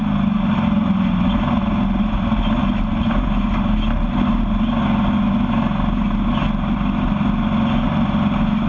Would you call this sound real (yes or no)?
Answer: yes